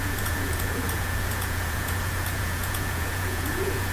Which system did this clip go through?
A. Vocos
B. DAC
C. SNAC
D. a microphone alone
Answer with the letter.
A